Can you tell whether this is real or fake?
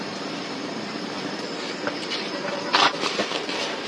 fake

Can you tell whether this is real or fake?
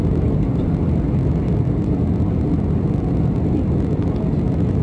real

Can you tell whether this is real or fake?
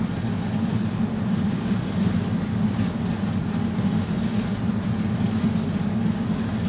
real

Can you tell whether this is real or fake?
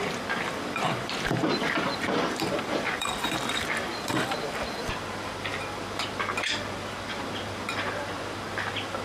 fake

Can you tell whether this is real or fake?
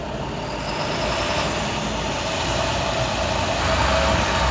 real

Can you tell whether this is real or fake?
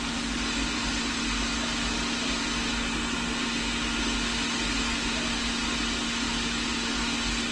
real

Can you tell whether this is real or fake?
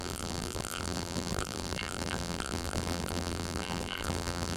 fake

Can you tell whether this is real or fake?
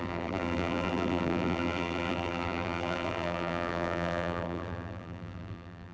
fake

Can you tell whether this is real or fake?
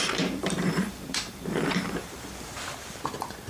fake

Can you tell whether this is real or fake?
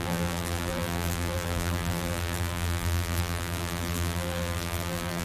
fake